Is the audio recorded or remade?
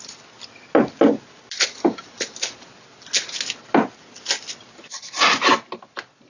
recorded